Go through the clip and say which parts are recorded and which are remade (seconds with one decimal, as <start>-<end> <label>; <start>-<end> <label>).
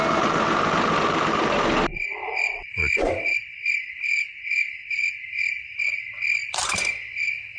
0.0-1.9 recorded; 1.9-3.7 remade; 3.7-7.6 recorded